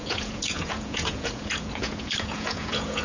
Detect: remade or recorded remade